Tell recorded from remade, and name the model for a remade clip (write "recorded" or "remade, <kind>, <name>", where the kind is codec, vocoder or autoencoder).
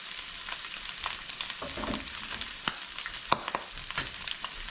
recorded